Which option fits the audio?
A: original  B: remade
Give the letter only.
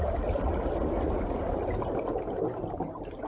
A